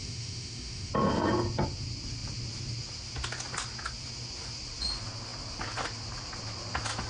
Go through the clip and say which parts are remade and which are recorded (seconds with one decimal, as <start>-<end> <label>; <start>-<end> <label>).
0.0-0.9 remade; 0.9-7.1 recorded